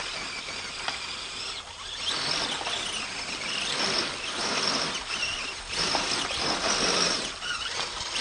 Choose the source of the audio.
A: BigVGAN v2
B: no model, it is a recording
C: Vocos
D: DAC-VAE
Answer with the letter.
B